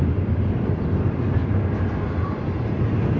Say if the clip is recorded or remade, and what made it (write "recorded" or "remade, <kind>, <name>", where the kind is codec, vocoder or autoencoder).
recorded